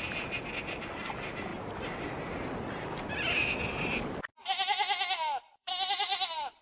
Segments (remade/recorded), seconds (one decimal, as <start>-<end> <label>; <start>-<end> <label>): 0.0-6.6 recorded